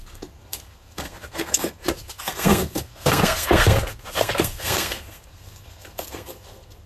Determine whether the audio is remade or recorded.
remade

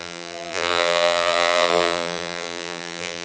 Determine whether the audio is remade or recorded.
remade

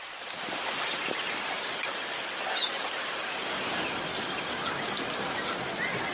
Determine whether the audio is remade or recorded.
recorded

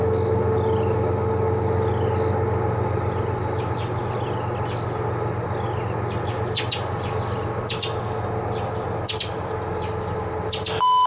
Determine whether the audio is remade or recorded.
recorded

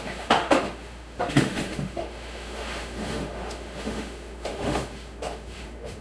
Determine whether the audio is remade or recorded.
remade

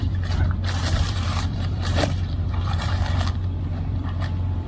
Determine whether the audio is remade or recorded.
remade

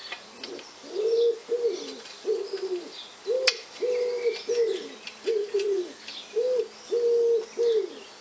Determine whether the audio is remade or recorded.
recorded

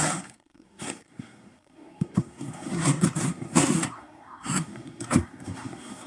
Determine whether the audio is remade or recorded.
remade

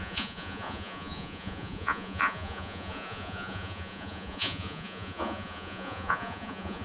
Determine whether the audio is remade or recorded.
remade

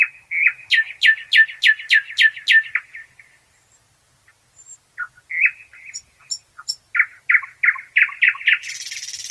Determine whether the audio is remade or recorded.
recorded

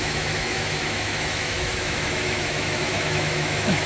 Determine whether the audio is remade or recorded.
remade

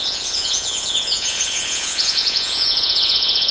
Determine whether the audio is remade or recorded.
remade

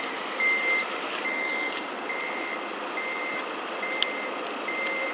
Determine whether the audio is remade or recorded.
recorded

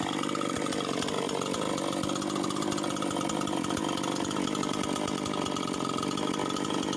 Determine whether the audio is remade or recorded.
recorded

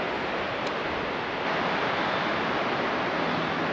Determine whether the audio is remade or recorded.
recorded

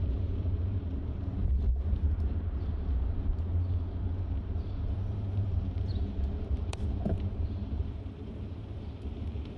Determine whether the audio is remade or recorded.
remade